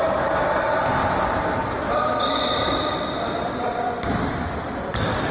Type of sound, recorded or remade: remade